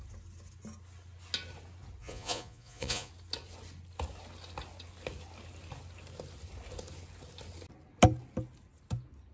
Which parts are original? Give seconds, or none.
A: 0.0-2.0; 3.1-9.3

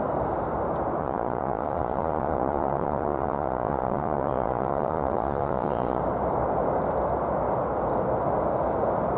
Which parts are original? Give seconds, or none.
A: 0.0-1.0; 6.0-9.2

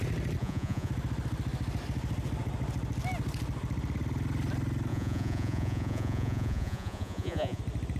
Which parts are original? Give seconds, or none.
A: 0.0-0.4; 0.9-4.9; 7.6-8.0

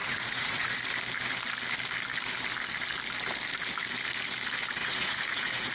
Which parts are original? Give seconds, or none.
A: 0.8-4.8